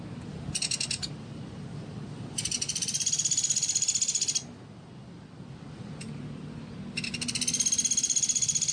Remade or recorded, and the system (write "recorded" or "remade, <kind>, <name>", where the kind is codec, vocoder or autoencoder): recorded